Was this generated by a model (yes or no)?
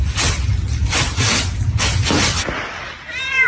no